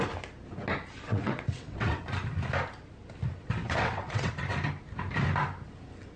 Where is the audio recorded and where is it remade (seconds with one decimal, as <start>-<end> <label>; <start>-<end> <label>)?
0.0-1.1 recorded; 1.1-2.0 remade; 2.0-3.6 recorded; 3.6-4.3 remade; 4.3-6.2 recorded